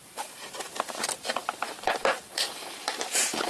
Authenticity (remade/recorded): remade